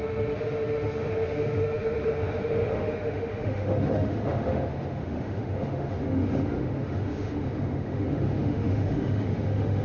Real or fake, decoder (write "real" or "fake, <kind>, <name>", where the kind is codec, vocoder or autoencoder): fake, autoencoder, DAC-VAE